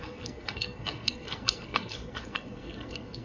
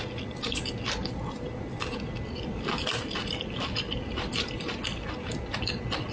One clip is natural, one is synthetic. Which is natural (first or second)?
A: second